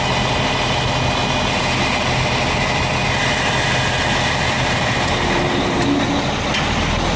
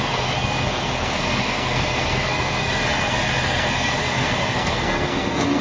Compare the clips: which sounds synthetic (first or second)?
second